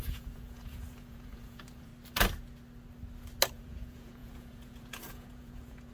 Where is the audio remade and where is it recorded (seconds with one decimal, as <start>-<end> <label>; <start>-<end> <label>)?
0.0-1.9 remade; 1.9-3.5 recorded; 3.5-5.9 remade